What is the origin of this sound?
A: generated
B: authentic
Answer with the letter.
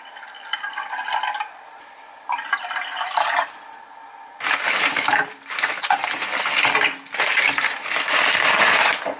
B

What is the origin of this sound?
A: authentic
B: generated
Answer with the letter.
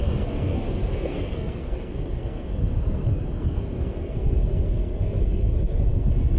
B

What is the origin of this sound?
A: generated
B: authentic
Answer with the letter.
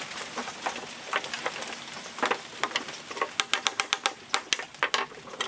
B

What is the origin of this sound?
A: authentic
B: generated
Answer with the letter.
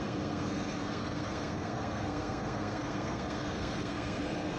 B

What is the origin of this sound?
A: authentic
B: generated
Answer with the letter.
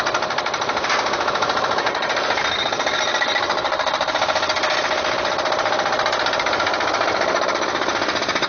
A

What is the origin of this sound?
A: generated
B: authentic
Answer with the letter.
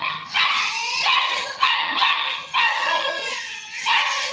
A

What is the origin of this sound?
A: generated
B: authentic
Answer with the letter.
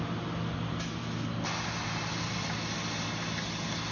B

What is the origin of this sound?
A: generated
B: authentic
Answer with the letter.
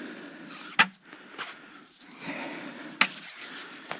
B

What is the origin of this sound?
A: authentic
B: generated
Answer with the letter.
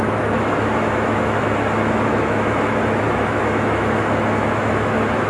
B